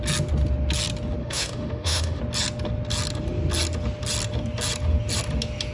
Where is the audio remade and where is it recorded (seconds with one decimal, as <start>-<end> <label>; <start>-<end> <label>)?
0.0-1.2 recorded; 1.2-2.2 remade; 2.2-5.7 recorded